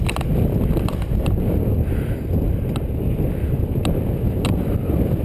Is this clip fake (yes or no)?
no